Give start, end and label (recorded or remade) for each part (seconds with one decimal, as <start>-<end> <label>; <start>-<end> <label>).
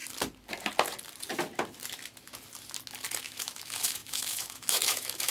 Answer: 0.0-3.2 recorded; 3.2-5.3 remade